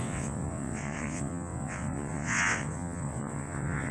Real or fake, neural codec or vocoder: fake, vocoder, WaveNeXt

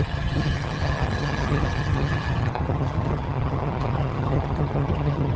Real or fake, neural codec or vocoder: fake, vocoder, HiFi-GAN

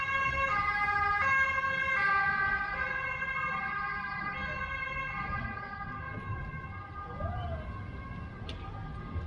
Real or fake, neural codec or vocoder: real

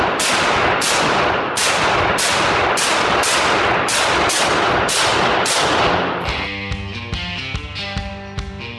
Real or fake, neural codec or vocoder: real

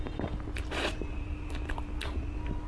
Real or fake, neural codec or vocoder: real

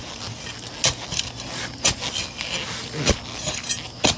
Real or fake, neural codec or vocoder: real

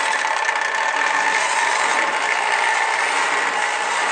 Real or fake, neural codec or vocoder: real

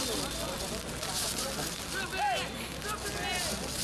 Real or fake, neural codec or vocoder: real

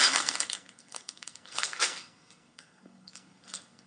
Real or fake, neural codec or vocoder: fake, codec, SNAC